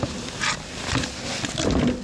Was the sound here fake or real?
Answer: real